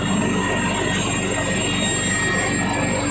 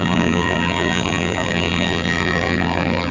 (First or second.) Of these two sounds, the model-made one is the second